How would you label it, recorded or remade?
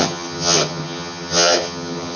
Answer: remade